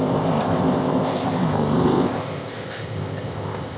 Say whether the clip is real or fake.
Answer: fake